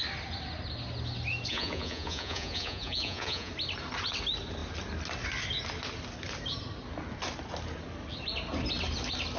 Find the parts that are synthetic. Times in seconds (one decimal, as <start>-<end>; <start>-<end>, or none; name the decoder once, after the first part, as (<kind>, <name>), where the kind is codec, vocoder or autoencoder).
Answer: 1.5-3.5 (vocoder, Vocos)